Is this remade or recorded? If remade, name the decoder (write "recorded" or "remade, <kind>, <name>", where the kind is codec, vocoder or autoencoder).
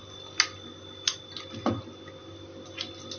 recorded